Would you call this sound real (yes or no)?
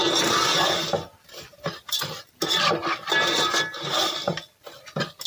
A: yes